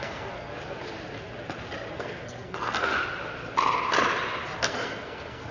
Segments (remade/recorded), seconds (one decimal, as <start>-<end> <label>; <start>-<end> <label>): 0.0-0.5 remade; 0.5-1.9 recorded; 1.9-2.9 remade; 2.9-4.6 recorded; 4.6-5.5 remade